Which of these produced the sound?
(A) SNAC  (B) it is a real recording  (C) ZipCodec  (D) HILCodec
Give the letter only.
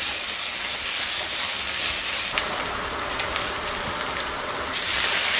B